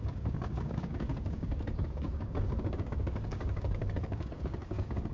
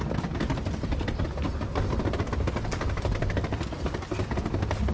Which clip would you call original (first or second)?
second